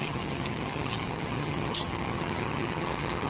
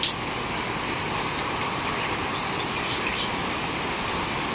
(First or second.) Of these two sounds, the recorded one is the second